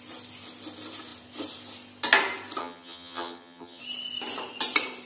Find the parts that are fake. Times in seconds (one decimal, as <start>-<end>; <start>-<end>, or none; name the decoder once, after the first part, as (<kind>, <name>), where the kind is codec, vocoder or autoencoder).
2.6-3.8 (vocoder, HiFi-GAN)